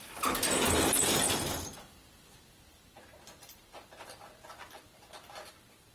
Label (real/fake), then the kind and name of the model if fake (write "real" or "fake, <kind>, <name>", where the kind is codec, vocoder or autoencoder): real